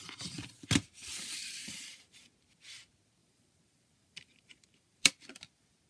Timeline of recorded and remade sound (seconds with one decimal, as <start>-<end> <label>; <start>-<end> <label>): 0.0-1.6 recorded; 1.6-2.3 remade; 2.3-3.2 recorded; 3.2-5.1 remade; 5.1-5.9 recorded